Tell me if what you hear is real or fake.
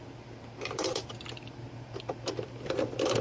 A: real